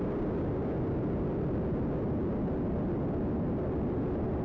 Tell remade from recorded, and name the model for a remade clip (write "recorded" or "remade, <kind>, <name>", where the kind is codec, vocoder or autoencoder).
recorded